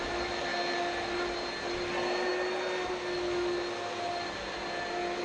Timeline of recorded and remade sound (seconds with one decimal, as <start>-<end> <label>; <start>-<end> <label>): 0.0-5.2 recorded